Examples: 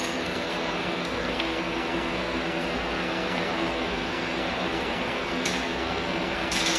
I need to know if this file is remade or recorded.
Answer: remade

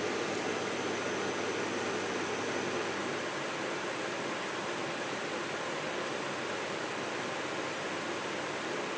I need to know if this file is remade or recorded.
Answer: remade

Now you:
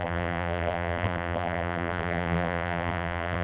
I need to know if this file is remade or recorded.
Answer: remade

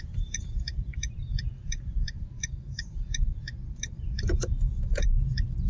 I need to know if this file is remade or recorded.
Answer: remade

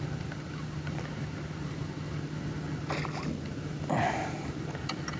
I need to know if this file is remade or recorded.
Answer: recorded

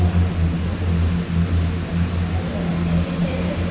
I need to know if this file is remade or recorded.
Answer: recorded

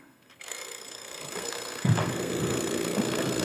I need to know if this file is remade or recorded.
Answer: remade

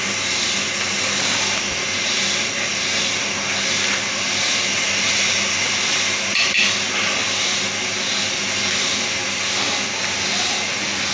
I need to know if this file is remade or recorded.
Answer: recorded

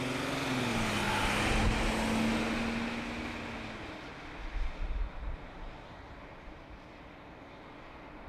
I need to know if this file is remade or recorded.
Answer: recorded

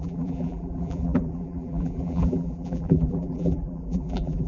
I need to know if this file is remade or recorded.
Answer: remade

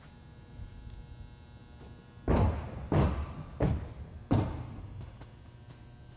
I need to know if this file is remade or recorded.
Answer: recorded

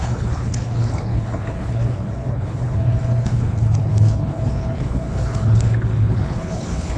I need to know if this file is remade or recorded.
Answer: remade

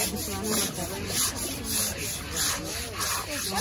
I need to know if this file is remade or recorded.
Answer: recorded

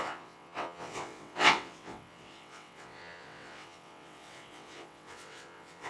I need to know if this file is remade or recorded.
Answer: remade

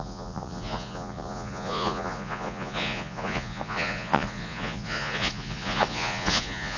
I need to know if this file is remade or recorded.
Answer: remade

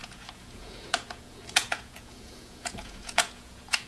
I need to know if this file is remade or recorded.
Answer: remade